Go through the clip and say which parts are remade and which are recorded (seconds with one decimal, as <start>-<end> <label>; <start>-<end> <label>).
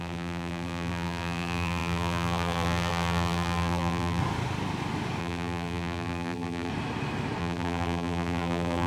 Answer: 0.0-4.2 remade; 4.2-5.2 recorded; 5.2-6.7 remade; 6.7-7.4 recorded; 7.4-8.9 remade